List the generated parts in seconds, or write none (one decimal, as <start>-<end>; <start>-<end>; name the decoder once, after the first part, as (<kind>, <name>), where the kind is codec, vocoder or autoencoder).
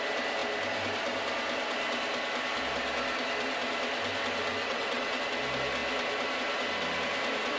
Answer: 4.6-5.2 (vocoder, WaveNeXt)